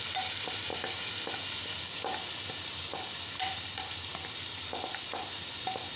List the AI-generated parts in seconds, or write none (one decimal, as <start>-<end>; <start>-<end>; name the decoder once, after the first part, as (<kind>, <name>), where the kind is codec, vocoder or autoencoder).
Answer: none